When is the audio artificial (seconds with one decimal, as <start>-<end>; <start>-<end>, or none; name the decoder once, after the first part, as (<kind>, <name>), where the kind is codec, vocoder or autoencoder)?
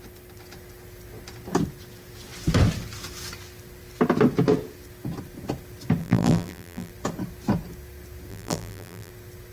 6.0-6.9 (vocoder, BigVGAN v2); 8.3-9.1